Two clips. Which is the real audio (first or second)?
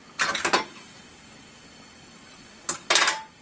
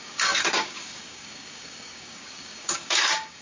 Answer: first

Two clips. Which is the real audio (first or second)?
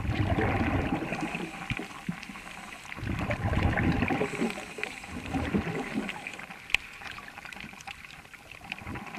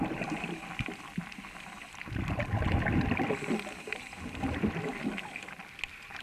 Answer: second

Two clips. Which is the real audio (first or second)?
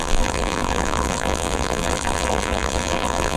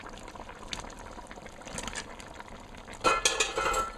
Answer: second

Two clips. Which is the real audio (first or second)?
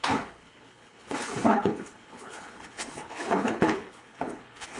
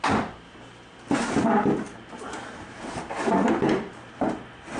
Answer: second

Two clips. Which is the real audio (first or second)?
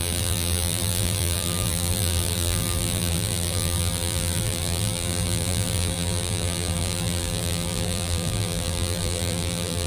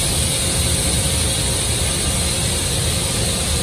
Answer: second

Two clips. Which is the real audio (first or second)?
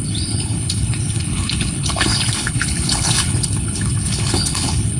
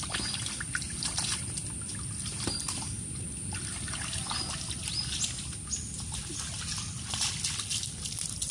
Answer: second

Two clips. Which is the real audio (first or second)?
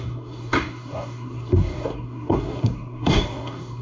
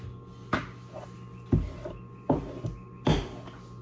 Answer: second